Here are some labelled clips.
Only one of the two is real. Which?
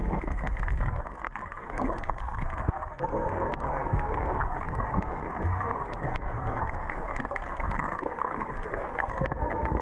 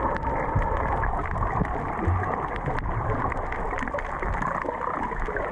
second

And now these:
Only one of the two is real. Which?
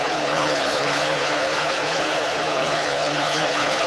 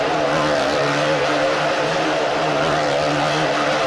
second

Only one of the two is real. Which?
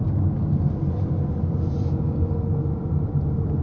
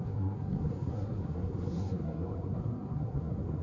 first